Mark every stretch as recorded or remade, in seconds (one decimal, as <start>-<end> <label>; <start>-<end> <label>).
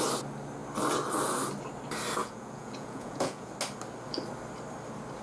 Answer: 0.0-2.2 recorded; 2.2-3.5 remade; 3.5-5.2 recorded